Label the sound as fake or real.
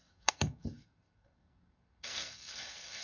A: fake